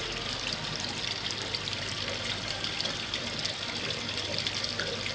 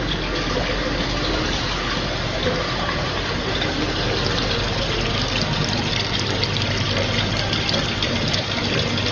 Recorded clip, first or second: second